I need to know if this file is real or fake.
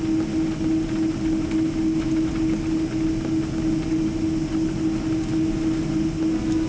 real